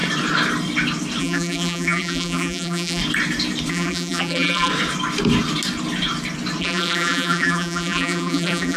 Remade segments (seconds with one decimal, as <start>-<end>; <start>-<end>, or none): 1.2-3.0; 3.7-4.7; 6.6-8.8